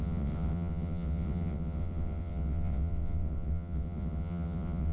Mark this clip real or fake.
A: fake